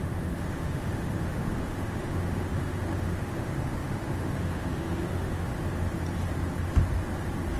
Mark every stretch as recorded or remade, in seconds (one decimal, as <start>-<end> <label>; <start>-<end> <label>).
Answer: 0.0-5.5 remade; 5.5-7.6 recorded

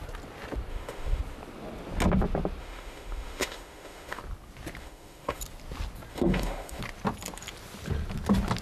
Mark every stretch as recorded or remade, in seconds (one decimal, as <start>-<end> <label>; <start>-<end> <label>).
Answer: 0.0-0.7 recorded; 0.7-1.2 remade; 1.2-2.6 recorded; 2.6-4.2 remade; 4.2-4.8 recorded; 4.8-5.4 remade; 5.4-6.1 recorded; 6.1-6.8 remade; 6.8-8.6 recorded

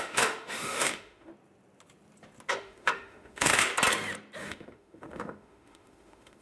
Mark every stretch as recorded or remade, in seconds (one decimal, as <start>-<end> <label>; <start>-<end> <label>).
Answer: 0.0-1.3 remade; 1.3-2.5 recorded; 2.5-3.7 remade; 3.7-4.4 recorded; 4.4-6.4 remade

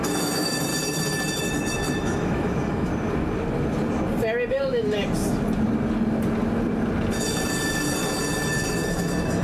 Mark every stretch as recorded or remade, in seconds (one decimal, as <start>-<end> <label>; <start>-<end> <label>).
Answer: 0.0-0.7 remade; 0.7-1.4 recorded; 1.4-2.9 remade; 2.9-4.5 recorded; 4.5-5.0 remade; 5.0-8.9 recorded; 8.9-9.4 remade

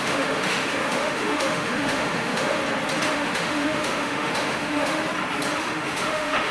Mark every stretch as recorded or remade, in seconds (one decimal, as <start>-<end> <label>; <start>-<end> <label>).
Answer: 0.0-2.6 remade; 2.6-3.1 recorded; 3.1-5.0 remade; 5.0-5.6 recorded; 5.6-6.5 remade